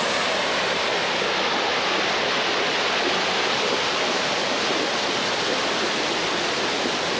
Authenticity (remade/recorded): recorded